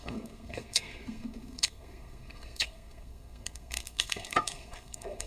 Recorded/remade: remade